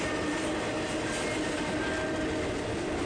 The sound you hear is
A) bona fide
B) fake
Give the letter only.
A